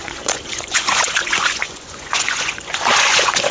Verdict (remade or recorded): remade